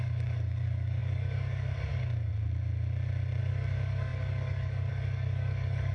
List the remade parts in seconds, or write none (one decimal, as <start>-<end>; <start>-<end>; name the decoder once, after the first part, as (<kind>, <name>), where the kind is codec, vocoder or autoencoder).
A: 0.0-2.3 (codec, DAC); 3.4-5.9